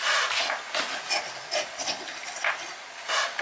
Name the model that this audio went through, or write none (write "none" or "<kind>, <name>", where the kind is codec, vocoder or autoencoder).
none